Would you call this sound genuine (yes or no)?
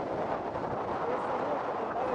yes